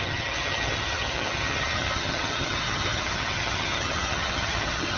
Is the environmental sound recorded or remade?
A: remade